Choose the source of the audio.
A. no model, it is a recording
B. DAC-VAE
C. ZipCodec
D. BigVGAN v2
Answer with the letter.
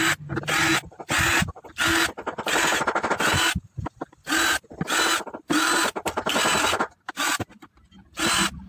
A